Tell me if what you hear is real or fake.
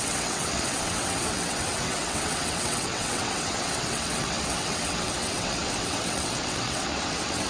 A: fake